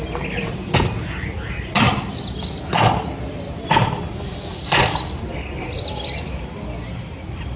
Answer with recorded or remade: recorded